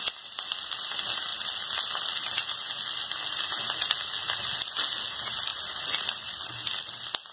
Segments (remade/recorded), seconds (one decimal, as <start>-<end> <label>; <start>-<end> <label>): 0.0-7.3 recorded